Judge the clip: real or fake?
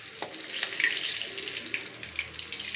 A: real